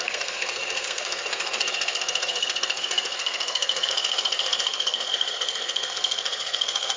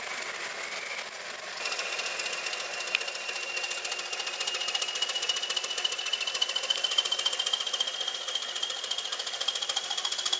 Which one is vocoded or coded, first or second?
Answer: first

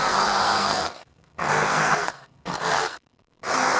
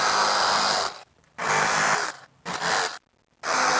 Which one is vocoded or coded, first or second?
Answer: first